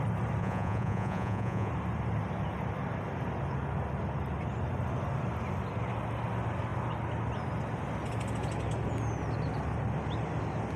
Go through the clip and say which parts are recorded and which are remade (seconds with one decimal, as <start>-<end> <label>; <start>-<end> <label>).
0.0-0.4 recorded; 0.4-1.7 remade; 1.7-10.8 recorded